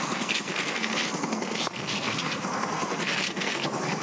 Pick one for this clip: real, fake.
fake